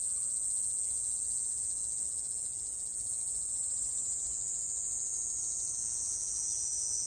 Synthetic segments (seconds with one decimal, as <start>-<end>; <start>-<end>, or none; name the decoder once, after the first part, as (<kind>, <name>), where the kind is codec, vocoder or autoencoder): 0.0-3.6 (vocoder, Vocos); 4.2-7.1